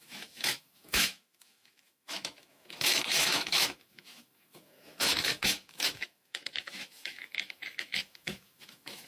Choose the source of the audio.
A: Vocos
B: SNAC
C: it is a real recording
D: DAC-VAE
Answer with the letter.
D